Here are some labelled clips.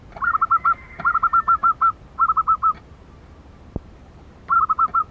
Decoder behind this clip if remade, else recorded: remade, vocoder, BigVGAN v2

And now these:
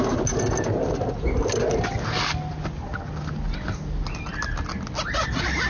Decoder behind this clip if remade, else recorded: recorded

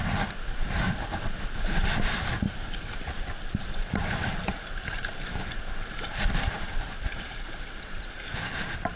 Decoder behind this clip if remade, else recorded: remade, vocoder, BigVGAN v2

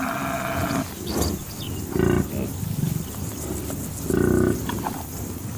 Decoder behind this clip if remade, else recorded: recorded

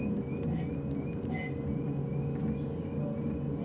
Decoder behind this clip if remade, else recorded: recorded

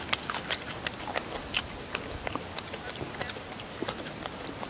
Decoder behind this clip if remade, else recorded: recorded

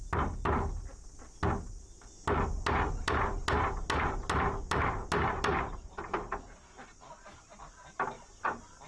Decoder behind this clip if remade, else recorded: recorded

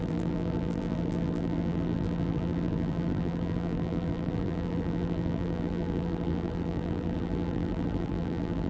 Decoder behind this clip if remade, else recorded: remade, vocoder, BigVGAN v2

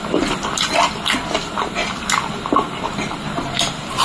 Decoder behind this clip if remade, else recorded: recorded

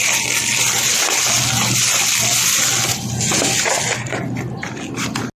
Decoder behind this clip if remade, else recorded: recorded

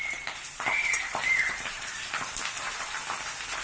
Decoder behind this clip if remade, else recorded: remade, vocoder, BigVGAN v2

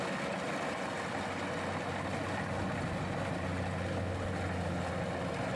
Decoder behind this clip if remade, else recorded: recorded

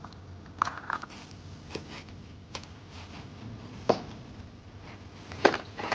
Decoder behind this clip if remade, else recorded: recorded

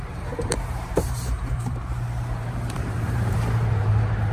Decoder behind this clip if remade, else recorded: remade, vocoder, BigVGAN v2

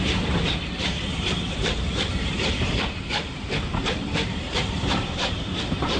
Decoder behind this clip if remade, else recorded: remade, vocoder, BigVGAN v2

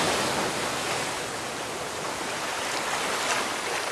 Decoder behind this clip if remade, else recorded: recorded